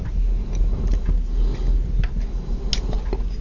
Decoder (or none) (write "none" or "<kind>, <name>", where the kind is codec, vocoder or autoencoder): none